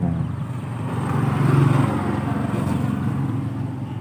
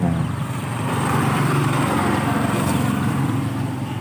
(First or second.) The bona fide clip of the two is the first